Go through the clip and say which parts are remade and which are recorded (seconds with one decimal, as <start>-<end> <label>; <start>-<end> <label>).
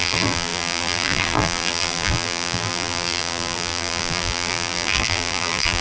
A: 0.0-5.8 remade